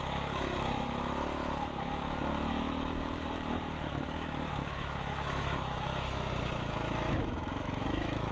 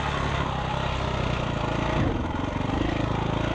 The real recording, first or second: second